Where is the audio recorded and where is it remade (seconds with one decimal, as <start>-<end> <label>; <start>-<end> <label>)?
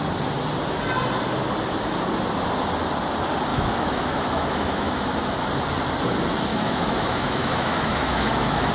0.0-3.5 recorded; 3.5-4.9 remade; 4.9-6.5 recorded; 6.5-8.7 remade